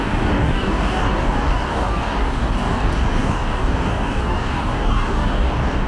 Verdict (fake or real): fake